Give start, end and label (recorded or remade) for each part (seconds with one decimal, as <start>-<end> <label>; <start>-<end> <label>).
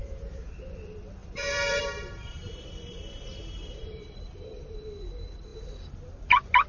0.0-0.5 remade; 0.5-1.2 recorded; 1.2-2.1 remade; 2.1-6.7 recorded